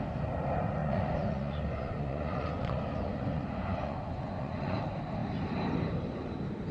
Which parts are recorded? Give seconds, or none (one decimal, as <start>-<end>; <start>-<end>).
0.0-0.8; 4.8-6.7

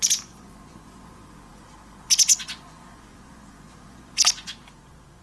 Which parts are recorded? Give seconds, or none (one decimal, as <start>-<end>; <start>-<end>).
none

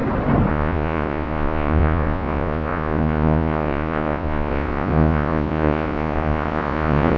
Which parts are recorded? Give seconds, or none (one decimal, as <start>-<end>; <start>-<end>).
0.0-0.5

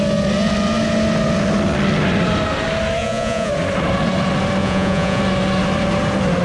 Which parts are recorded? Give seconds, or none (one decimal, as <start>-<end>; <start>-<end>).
0.0-3.0; 3.5-4.6; 5.2-6.4

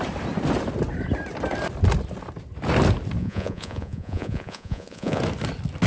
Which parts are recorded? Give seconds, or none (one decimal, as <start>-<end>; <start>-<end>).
0.0-3.2; 5.2-5.9

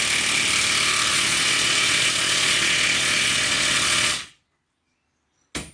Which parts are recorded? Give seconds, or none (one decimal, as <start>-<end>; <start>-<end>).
0.0-1.1; 4.4-5.7

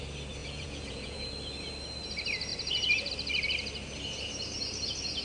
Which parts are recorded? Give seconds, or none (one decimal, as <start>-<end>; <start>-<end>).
0.0-0.4; 1.3-5.2

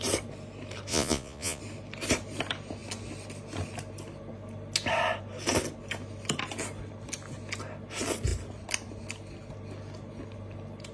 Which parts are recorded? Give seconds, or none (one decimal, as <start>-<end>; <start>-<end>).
0.0-0.9; 1.6-10.9